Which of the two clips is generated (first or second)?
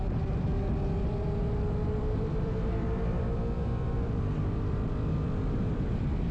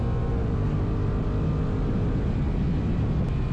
first